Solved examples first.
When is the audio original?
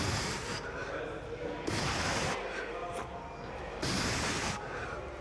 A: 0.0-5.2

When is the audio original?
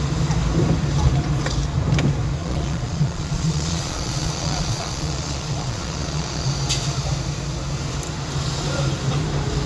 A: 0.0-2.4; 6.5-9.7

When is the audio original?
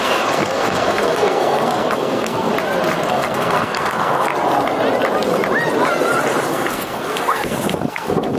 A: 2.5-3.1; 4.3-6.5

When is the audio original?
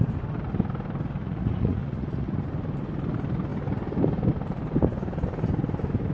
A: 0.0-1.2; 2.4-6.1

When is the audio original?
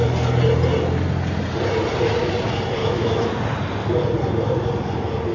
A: 0.0-2.8; 3.3-5.3